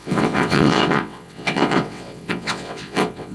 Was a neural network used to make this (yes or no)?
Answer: yes